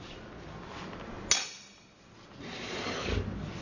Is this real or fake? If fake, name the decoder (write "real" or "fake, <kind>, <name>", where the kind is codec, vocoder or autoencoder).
real